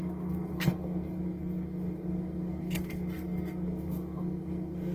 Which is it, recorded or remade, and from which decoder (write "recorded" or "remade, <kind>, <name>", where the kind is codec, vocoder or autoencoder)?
remade, codec, SNAC